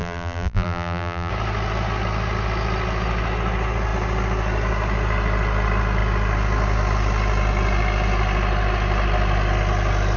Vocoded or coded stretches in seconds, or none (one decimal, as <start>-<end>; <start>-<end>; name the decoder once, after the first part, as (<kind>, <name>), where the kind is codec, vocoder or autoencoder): 0.0-1.3 (vocoder, BigVGAN v2)